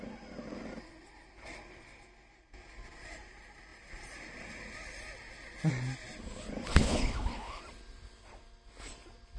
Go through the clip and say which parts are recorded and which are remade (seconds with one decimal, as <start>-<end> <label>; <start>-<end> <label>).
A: 0.0-6.7 recorded; 6.7-7.6 remade; 7.6-9.4 recorded